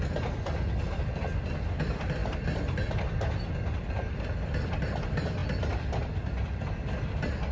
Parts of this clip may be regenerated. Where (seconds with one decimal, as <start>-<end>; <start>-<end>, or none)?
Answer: none